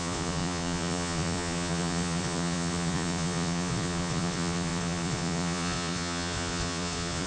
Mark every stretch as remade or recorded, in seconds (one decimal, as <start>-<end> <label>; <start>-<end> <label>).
0.0-7.3 remade